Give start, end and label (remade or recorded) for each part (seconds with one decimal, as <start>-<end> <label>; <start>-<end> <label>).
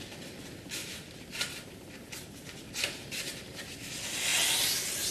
0.0-0.8 recorded; 0.8-3.9 remade; 3.9-5.1 recorded